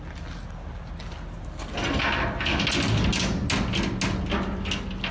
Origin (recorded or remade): recorded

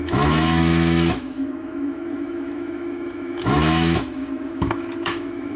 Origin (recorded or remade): remade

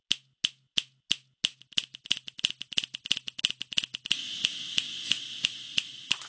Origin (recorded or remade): recorded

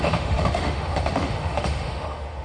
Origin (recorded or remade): remade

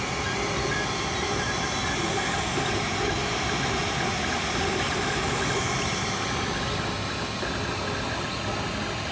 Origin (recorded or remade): recorded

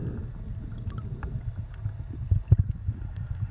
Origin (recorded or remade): recorded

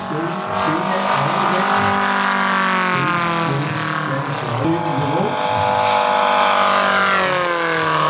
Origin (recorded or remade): recorded